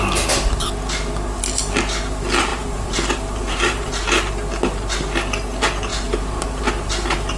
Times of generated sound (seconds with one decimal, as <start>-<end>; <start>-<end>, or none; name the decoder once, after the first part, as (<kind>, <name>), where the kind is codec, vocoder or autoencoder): 2.5-4.3 (vocoder, BigVGAN v2); 5.9-6.9